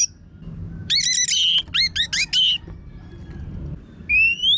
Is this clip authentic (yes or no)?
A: yes